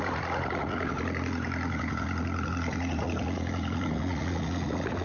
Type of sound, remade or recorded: remade